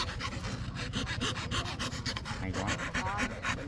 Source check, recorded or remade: recorded